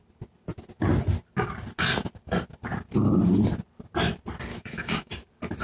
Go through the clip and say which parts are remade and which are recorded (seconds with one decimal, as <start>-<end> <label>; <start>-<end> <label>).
0.0-4.5 recorded; 4.5-5.1 remade; 5.1-5.6 recorded